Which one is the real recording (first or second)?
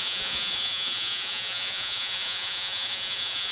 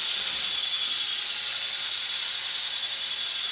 second